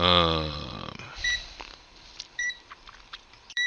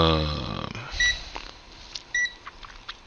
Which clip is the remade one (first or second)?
first